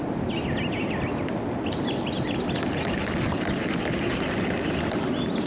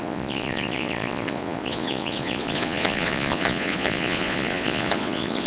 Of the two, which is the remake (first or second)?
second